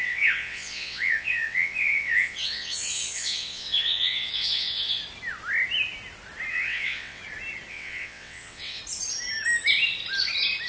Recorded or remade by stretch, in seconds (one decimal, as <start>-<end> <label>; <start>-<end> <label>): 0.0-5.0 remade; 5.0-6.5 recorded; 6.5-7.2 remade; 7.2-7.7 recorded; 7.7-8.8 remade; 8.8-10.7 recorded